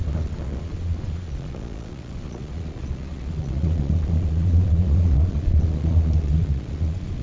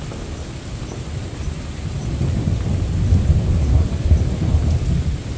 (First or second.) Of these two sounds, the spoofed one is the first